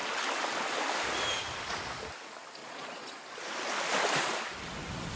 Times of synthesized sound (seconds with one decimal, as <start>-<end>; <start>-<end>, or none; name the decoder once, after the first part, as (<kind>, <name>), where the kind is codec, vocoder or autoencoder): 2.6-3.2 (vocoder, Vocos)